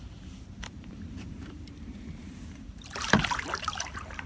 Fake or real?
fake